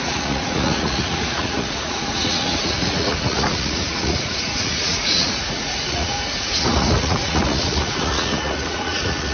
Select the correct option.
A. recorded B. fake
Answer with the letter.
B